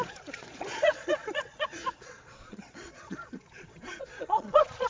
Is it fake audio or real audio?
fake